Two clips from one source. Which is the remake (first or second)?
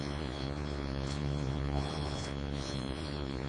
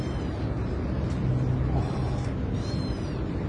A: first